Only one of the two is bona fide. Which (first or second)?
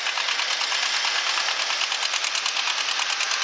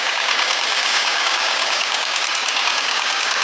first